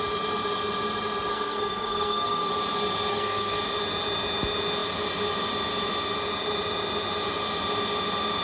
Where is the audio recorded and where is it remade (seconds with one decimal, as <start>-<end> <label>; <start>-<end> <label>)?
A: 0.0-1.3 recorded; 1.3-2.5 remade; 2.5-3.1 recorded; 3.1-3.6 remade; 3.6-8.4 recorded